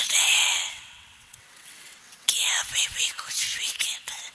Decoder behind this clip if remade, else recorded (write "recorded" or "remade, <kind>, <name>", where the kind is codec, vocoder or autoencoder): remade, vocoder, WaveNeXt